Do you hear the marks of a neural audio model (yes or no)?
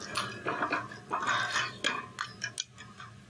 no